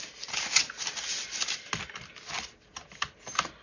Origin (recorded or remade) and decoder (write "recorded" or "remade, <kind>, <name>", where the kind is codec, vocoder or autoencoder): recorded